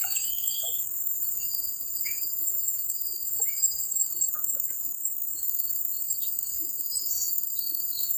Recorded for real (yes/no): no